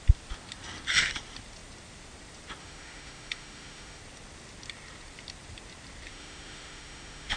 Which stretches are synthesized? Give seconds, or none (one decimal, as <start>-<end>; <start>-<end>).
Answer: 2.6-4.0; 6.1-7.4